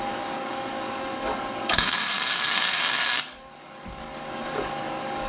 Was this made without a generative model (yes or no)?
no